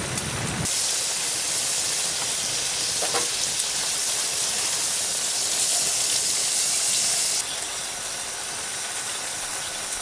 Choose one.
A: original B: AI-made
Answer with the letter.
A